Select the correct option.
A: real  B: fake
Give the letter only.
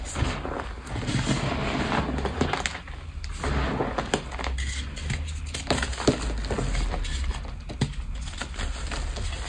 A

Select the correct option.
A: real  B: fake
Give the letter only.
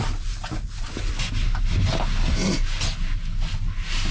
A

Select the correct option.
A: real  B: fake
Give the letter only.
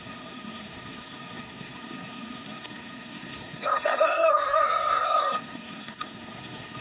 B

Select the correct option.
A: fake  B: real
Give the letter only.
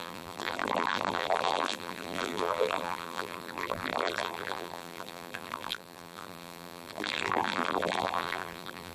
A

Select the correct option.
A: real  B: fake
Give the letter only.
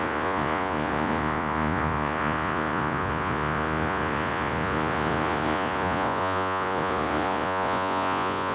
B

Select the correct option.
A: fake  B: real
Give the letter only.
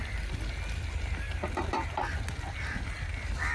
B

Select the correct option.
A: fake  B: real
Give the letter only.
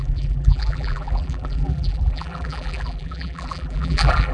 A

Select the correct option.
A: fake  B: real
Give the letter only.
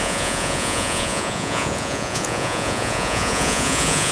A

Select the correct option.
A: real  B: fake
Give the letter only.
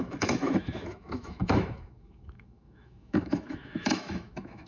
B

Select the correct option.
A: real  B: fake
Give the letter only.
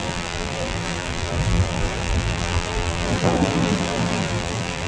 B